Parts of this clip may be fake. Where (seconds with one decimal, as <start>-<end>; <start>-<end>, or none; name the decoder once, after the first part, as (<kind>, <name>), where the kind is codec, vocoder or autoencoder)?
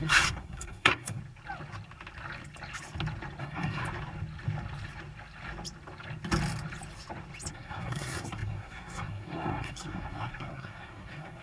0.0-1.2 (codec, SNAC); 3.4-3.8; 7.5-11.4